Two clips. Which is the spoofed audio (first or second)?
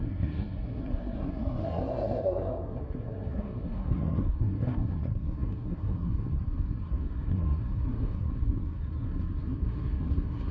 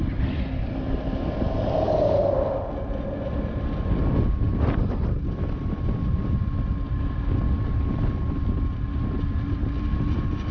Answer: first